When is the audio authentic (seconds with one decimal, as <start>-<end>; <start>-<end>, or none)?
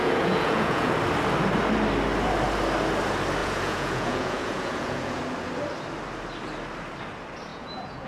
0.9-3.4; 5.2-7.5